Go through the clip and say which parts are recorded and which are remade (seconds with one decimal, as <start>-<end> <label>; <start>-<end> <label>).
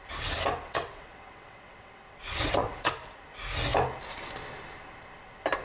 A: 0.0-0.6 recorded; 0.6-2.9 remade; 2.9-5.6 recorded